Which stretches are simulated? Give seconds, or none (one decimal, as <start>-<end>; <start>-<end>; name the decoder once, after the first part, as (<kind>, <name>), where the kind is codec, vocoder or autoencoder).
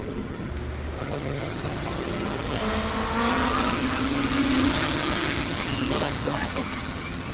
0.0-0.5 (vocoder, HiFi-GAN); 1.0-2.6; 3.3-7.3